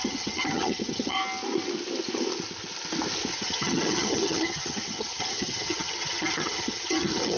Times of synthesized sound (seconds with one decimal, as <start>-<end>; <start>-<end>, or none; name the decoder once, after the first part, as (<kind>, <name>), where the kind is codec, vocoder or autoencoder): 0.0-1.2 (vocoder, HiFi-GAN); 3.3-7.4